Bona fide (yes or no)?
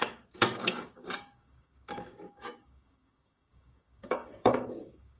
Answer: no